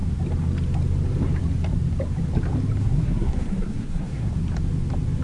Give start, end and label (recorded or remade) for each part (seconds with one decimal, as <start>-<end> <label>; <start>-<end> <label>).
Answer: 0.0-2.8 recorded; 2.8-4.3 remade; 4.3-5.2 recorded